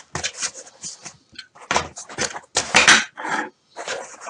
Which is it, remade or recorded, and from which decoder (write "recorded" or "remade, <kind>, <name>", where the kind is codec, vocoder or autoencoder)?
recorded